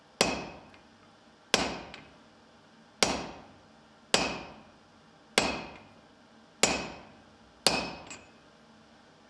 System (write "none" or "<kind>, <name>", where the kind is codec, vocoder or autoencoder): none